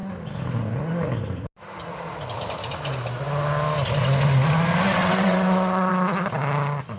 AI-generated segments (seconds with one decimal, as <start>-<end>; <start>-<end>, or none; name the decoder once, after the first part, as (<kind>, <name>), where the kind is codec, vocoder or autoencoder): 4.9-5.9 (vocoder, WaveNeXt)